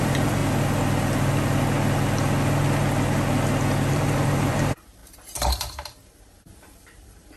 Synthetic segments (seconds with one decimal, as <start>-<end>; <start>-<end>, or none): 0.0-0.4; 3.9-7.4